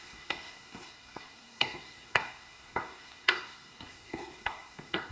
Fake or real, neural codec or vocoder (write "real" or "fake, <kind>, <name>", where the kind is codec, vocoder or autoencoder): fake, codec, SNAC